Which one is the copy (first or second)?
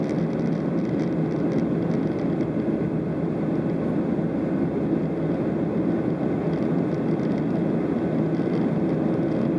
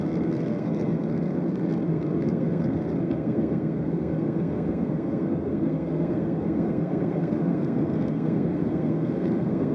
second